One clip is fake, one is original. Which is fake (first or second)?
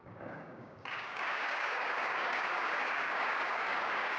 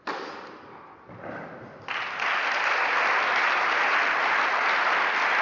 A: first